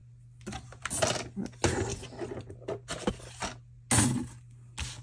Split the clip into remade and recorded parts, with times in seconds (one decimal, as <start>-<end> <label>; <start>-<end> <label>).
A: 0.0-5.0 recorded